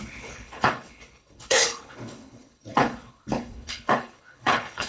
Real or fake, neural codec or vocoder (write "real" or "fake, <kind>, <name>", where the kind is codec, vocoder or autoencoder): fake, codec, HILCodec